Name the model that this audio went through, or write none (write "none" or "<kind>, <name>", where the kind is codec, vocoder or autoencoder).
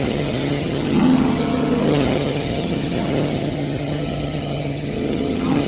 vocoder, HiFi-GAN